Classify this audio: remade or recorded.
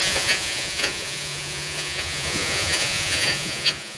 remade